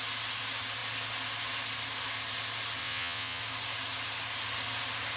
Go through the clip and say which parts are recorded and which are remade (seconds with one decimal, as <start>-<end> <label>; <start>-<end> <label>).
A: 0.0-2.8 recorded; 2.8-3.4 remade; 3.4-5.2 recorded